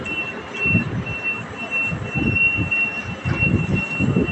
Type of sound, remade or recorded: recorded